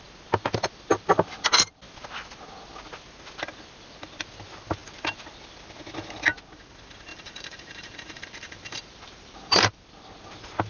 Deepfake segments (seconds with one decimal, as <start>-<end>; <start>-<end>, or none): 7.1-9.7